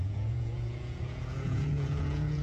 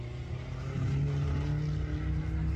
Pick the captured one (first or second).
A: second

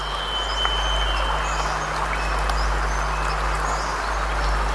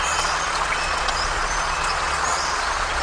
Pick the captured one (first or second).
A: first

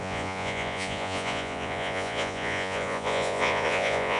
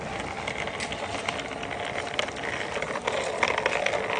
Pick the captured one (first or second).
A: second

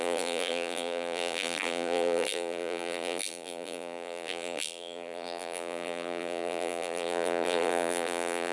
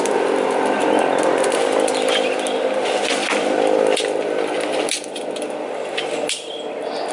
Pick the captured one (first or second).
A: second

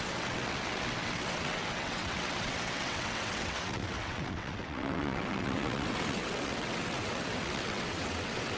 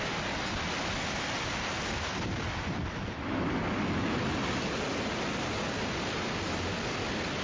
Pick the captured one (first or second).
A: second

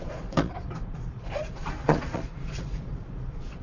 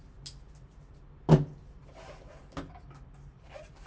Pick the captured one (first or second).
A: second